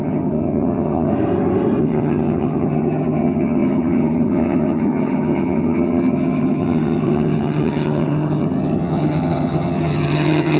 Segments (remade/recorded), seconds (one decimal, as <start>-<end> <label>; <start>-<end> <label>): 0.0-1.1 remade; 1.1-1.8 recorded; 1.8-10.6 remade